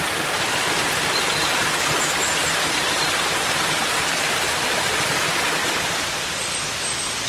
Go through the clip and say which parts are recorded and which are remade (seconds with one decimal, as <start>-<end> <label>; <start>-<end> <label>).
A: 0.0-2.2 recorded; 2.2-6.6 remade; 6.6-7.3 recorded